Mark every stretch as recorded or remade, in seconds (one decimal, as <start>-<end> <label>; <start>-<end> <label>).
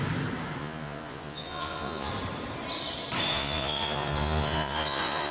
0.0-0.6 recorded; 0.6-2.1 remade; 2.1-3.3 recorded; 3.3-5.3 remade